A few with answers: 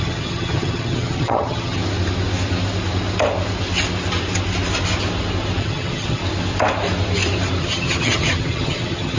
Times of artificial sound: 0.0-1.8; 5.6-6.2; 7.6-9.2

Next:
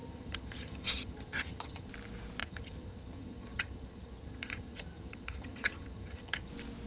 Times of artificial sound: 0.0-1.9; 2.4-6.5

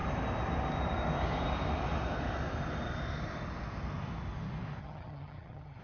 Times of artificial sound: 4.8-5.8

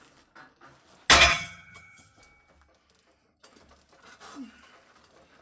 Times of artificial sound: 1.3-2.2

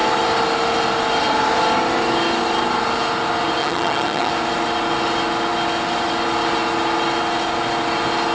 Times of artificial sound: 3.6-4.3

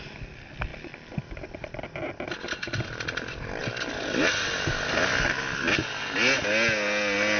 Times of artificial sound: none